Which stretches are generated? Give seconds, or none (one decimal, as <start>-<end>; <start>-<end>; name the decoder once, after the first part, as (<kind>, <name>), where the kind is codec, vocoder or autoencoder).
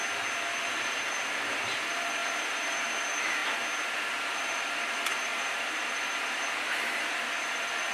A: 0.6-3.4 (vocoder, BigVGAN v2); 4.1-7.9